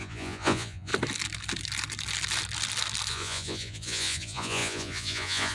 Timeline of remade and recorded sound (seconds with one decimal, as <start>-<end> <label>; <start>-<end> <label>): 0.0-0.9 remade; 0.9-3.1 recorded; 3.1-5.5 remade